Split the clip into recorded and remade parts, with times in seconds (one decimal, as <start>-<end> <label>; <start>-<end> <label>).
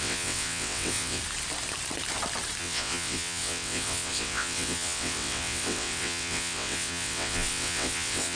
0.0-1.2 remade; 1.2-2.6 recorded; 2.6-8.4 remade